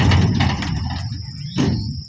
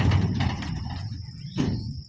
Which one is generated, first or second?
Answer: second